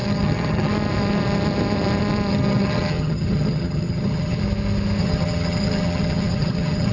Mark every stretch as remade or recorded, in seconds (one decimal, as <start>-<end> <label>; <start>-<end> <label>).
0.0-0.7 remade; 0.7-2.3 recorded; 2.3-4.4 remade; 4.4-5.0 recorded; 5.0-6.9 remade

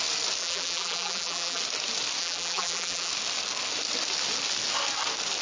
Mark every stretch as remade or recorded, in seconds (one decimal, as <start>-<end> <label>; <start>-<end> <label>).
0.0-0.4 recorded; 0.4-1.6 remade; 1.6-2.2 recorded; 2.2-3.1 remade; 3.1-5.4 recorded